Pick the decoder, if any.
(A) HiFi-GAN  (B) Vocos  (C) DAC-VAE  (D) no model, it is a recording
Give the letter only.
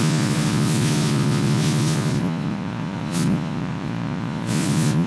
B